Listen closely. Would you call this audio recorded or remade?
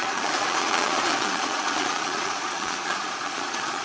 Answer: remade